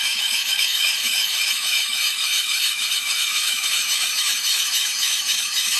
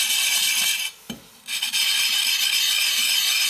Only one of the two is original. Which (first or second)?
second